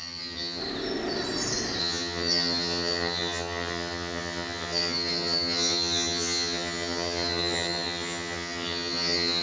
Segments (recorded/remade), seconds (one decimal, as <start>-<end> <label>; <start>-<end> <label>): 0.0-0.6 remade; 0.6-1.8 recorded; 1.8-9.4 remade